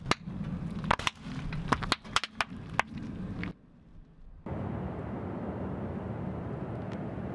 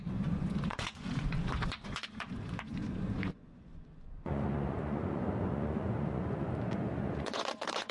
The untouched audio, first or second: first